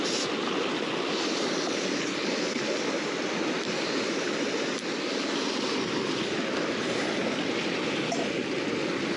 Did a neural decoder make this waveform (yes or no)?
no